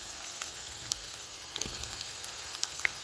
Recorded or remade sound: remade